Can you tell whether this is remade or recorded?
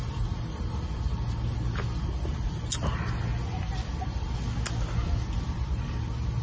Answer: recorded